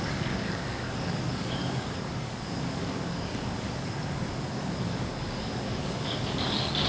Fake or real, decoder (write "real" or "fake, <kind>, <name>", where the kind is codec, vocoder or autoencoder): fake, codec, DAC